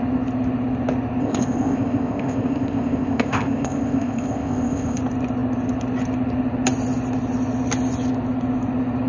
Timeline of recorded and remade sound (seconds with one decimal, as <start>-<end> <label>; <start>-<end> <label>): 0.0-1.2 recorded; 1.2-5.0 remade; 5.0-9.1 recorded

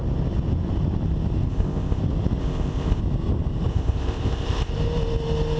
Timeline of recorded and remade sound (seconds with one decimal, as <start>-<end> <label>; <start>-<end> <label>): 0.0-1.5 recorded; 1.5-2.0 remade; 2.0-2.4 recorded; 2.4-3.0 remade; 3.0-3.7 recorded; 3.7-4.7 remade; 4.7-5.6 recorded

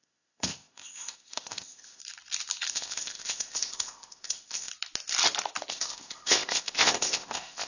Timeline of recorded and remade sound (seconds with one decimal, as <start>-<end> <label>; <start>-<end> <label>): 0.0-2.0 remade; 2.0-2.7 recorded; 2.7-4.7 remade; 4.7-5.7 recorded; 5.7-7.7 remade

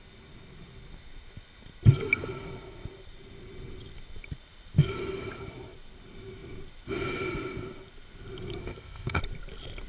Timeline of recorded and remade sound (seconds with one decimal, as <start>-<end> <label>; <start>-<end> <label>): 0.0-8.6 recorded; 8.6-9.2 remade; 9.2-9.9 recorded

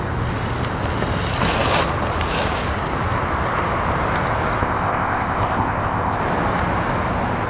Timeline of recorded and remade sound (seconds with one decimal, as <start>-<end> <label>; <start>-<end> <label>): 0.0-4.6 recorded; 4.6-6.2 remade; 6.2-7.5 recorded